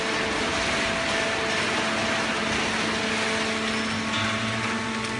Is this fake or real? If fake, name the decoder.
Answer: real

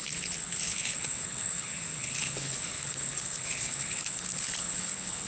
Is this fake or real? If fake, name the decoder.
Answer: fake, codec, HILCodec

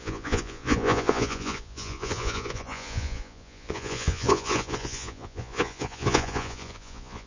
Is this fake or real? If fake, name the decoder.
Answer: fake, vocoder, Vocos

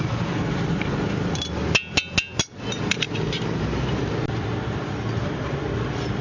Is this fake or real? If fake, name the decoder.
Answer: real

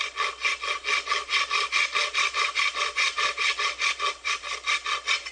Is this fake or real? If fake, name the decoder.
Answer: real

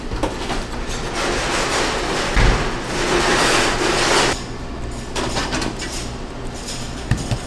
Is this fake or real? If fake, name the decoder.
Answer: real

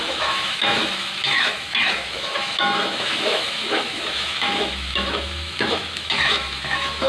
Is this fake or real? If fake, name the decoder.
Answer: fake, autoencoder, DAC-VAE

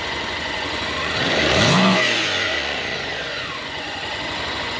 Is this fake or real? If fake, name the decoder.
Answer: fake, vocoder, Vocos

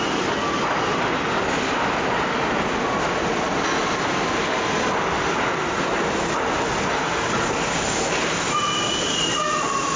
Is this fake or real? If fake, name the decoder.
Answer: real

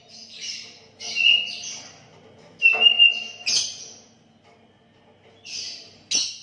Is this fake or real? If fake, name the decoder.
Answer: real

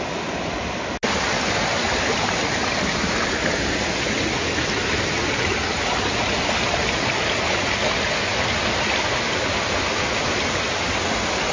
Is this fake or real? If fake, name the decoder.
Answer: real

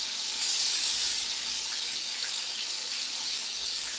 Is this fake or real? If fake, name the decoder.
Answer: fake, codec, DAC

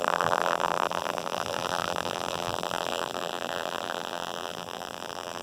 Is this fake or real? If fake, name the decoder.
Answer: fake, vocoder, BigVGAN v2